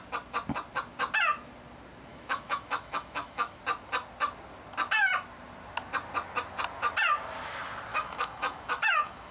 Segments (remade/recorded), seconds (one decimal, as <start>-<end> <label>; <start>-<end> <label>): 0.0-2.1 recorded; 2.1-3.6 remade; 3.6-7.9 recorded; 7.9-9.3 remade